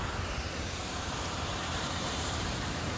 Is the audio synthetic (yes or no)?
yes